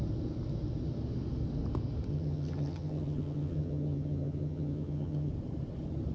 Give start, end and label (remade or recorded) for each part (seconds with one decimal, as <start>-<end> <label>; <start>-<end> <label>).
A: 0.0-2.1 recorded; 2.1-5.3 remade; 5.3-6.1 recorded